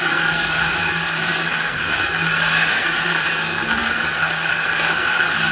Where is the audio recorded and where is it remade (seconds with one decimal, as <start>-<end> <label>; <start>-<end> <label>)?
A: 0.0-5.5 remade